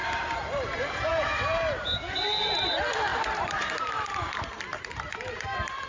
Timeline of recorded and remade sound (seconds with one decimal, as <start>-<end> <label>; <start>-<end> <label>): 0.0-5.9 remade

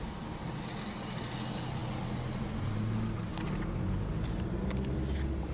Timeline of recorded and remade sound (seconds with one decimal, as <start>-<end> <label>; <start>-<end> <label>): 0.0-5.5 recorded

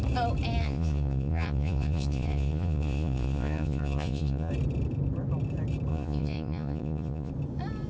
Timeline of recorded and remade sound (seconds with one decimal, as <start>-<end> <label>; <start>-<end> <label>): 0.0-0.6 recorded; 0.6-4.5 remade; 4.5-5.9 recorded; 5.9-7.3 remade; 7.3-7.9 recorded

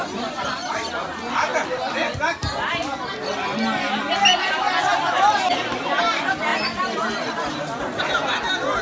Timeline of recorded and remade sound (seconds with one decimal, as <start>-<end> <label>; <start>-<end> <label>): 0.0-8.8 recorded

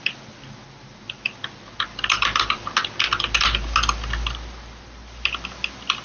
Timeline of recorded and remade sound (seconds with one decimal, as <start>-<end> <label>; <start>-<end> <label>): 0.0-6.0 recorded

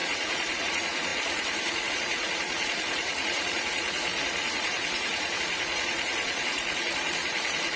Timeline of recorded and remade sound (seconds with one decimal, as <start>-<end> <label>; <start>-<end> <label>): 0.0-7.8 remade

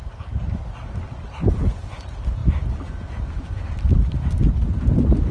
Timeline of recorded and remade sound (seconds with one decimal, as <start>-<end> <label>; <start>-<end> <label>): 0.0-2.4 recorded; 2.4-4.1 remade; 4.1-5.3 recorded